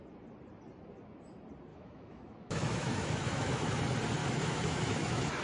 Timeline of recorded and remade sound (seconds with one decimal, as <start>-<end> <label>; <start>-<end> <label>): 0.0-1.7 recorded; 1.7-3.8 remade; 3.8-4.2 recorded; 4.2-5.4 remade